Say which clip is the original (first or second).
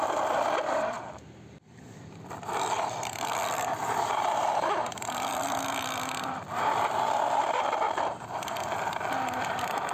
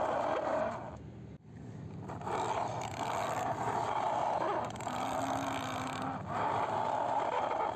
second